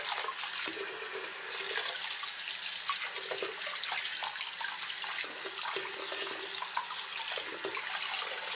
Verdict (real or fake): real